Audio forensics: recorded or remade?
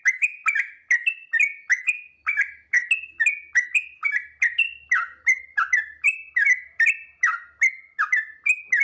recorded